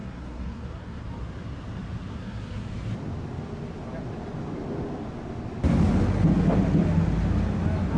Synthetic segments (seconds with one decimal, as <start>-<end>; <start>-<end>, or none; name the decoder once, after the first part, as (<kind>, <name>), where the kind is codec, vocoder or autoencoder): 0.0-1.0 (codec, SNAC); 2.1-2.7